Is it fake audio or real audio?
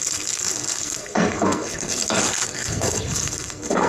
fake